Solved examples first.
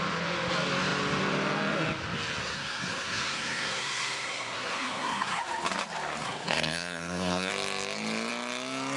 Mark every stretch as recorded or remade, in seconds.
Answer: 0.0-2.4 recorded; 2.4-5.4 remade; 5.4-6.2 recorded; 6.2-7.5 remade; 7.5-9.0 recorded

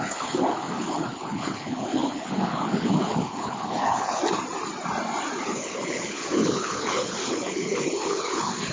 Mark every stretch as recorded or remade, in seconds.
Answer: 0.0-4.2 remade; 4.2-5.4 recorded; 5.4-8.7 remade

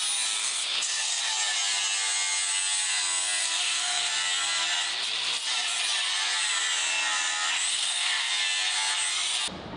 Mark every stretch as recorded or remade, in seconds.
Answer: 0.0-0.4 recorded; 0.4-1.2 remade; 1.2-3.4 recorded; 3.4-4.1 remade; 4.1-7.7 recorded; 7.7-8.3 remade; 8.3-9.8 recorded

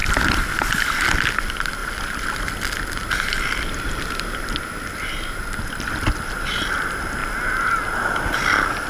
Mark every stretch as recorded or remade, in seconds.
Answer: 0.0-8.9 recorded

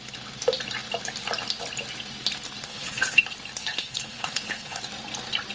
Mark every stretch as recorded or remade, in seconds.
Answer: 0.0-2.7 recorded; 2.7-3.2 remade; 3.2-3.6 recorded; 3.6-4.8 remade; 4.8-5.5 recorded

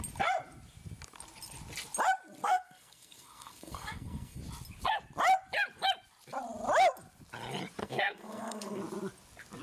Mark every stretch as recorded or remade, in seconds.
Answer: 0.0-2.4 recorded; 2.4-4.4 remade; 4.4-7.8 recorded; 7.8-8.8 remade; 8.8-9.6 recorded